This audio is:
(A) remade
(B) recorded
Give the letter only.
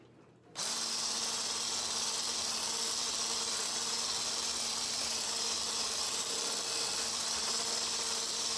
B